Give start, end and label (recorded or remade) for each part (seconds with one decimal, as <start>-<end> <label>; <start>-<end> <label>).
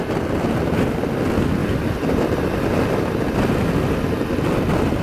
0.0-5.0 recorded